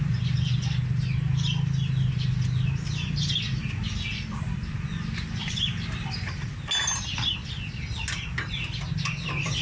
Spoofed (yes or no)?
no